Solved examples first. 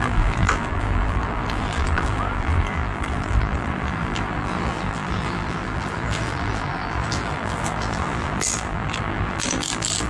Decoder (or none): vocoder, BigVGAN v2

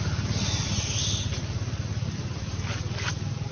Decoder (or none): none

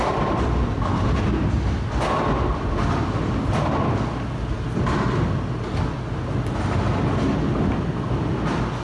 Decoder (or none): none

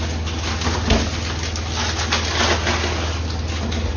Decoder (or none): none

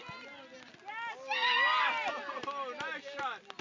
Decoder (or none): none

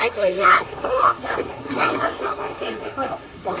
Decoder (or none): codec, SNAC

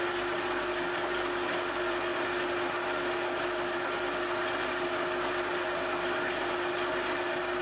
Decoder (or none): none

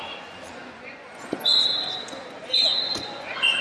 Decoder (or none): vocoder, Vocos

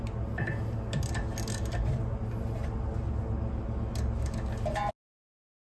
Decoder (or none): none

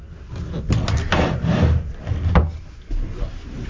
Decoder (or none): none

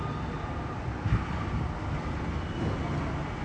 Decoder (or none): none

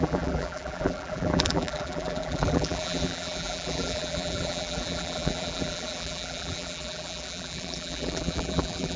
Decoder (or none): vocoder, BigVGAN v2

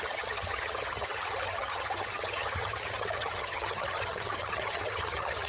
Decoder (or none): vocoder, HiFi-GAN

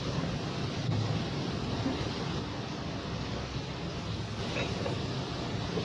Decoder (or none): none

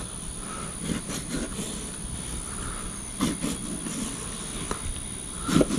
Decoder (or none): none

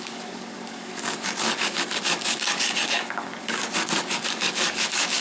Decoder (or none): codec, DAC